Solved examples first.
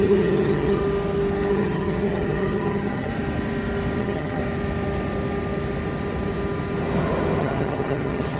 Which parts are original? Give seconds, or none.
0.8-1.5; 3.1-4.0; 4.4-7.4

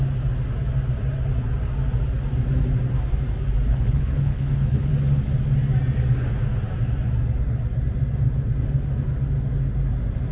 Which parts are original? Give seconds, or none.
0.0-3.7; 4.9-10.3

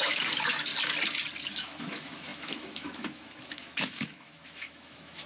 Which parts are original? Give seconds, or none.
0.7-1.5

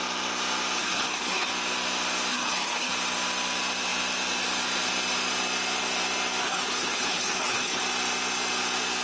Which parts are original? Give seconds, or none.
0.0-0.8; 1.5-2.3; 2.9-6.4; 7.8-9.0

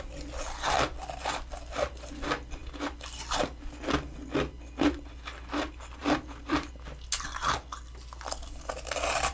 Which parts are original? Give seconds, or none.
0.0-6.0; 6.7-9.3